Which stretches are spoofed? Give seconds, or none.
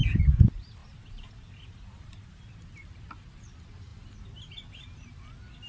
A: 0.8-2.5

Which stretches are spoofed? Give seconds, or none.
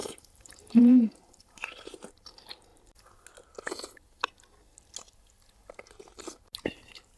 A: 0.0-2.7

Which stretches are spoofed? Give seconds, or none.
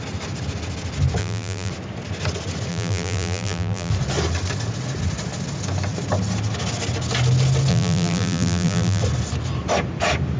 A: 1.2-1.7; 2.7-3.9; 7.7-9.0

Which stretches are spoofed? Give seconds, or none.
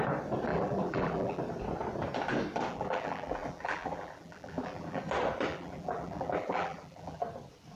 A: 0.5-1.4; 2.7-5.0; 5.5-7.2